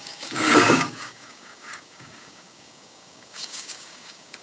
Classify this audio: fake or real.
fake